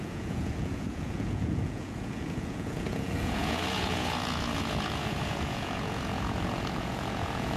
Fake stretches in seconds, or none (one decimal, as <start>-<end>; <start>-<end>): 0.0-7.6